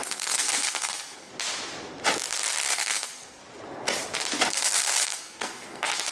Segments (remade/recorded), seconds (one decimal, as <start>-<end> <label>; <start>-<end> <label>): 0.0-1.3 remade; 1.3-2.7 recorded; 2.7-3.4 remade; 3.4-4.5 recorded; 4.5-6.1 remade